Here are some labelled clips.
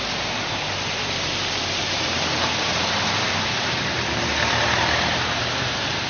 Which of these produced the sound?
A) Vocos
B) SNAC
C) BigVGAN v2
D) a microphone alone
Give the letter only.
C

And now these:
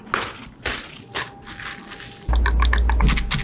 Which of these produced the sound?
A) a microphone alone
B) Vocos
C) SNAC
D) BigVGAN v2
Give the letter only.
A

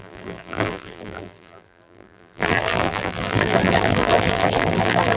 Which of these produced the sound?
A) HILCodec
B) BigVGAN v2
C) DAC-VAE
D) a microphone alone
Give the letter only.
B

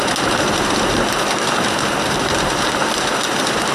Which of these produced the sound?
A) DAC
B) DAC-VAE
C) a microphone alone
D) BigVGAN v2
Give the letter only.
D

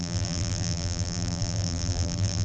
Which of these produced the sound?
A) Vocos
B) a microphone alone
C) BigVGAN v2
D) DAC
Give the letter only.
C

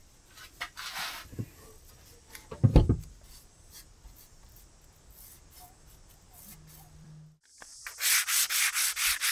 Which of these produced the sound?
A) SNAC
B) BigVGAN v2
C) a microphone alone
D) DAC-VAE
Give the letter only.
C